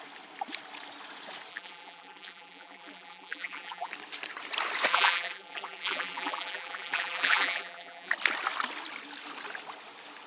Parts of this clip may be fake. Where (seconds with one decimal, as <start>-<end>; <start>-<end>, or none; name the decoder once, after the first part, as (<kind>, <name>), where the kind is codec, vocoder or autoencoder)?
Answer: 1.5-3.9 (vocoder, BigVGAN v2); 4.9-8.1